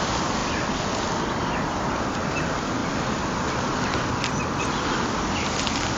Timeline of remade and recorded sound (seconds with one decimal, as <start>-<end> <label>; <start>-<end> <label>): 0.0-0.4 recorded; 0.4-2.3 remade; 2.3-2.8 recorded; 2.8-4.5 remade; 4.5-6.0 recorded